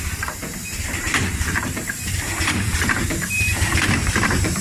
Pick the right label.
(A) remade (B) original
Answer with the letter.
A